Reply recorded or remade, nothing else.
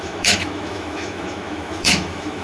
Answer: remade